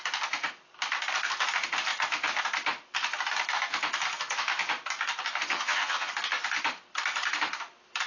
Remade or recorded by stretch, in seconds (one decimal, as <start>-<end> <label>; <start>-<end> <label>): 0.0-5.5 recorded; 5.5-6.1 remade; 6.1-8.1 recorded